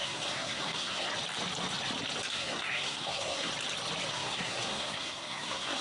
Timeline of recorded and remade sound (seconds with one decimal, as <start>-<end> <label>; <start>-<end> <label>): 0.0-1.1 remade; 1.1-2.3 recorded; 2.3-3.5 remade; 3.5-4.1 recorded; 4.1-5.8 remade